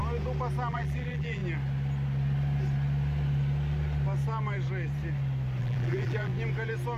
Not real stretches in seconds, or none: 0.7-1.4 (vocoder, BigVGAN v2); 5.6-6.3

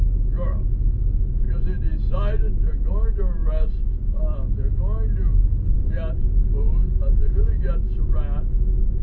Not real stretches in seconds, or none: none

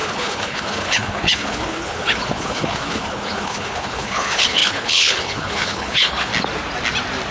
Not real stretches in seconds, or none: 0.0-6.3 (codec, HILCodec)

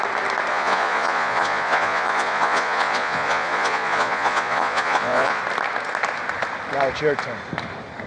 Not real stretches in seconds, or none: 0.5-5.4 (vocoder, Vocos)

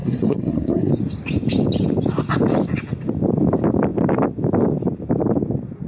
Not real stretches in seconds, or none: 0.0-0.9 (codec, SNAC)

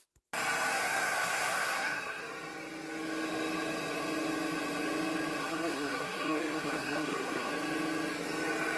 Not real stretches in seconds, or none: 0.7-2.2 (codec, SNAC); 5.4-7.5